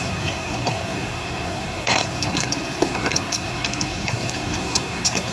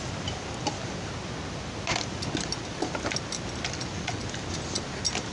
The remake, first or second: first